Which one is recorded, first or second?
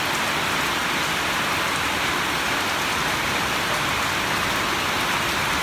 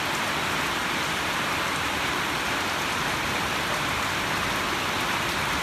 first